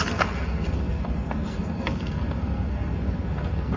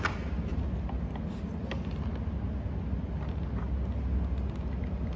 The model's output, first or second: first